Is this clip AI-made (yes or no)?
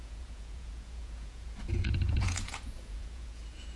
yes